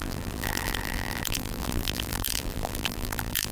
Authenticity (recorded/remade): remade